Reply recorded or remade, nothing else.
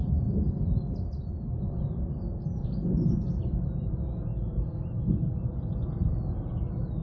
recorded